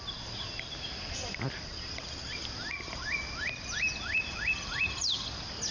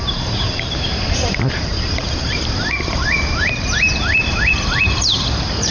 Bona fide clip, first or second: first